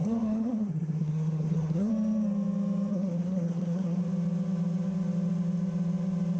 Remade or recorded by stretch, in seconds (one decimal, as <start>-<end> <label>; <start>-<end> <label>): 0.0-1.9 remade; 1.9-2.9 recorded; 2.9-4.0 remade; 4.0-6.4 recorded